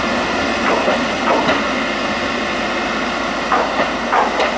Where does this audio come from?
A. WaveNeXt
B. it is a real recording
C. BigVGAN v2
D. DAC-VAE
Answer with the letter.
B